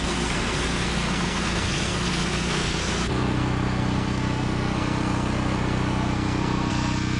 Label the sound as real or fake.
fake